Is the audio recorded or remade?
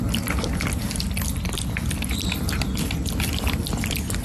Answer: recorded